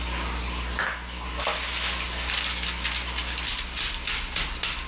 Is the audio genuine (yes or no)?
yes